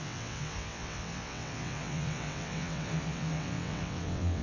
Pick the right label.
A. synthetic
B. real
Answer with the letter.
A